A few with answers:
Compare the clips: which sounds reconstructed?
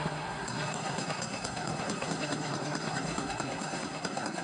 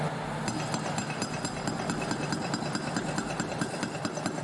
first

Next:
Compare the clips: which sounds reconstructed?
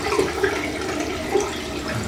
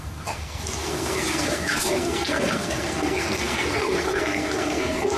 second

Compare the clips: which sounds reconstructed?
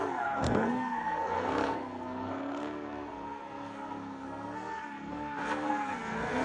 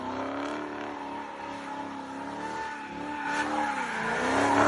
first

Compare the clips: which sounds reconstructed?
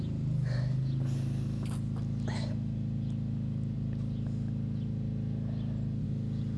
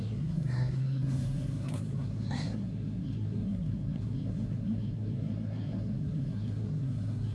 second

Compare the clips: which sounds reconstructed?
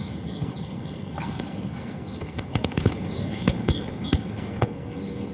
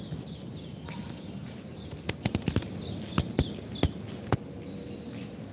first